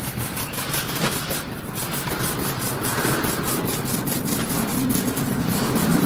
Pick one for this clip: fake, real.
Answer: fake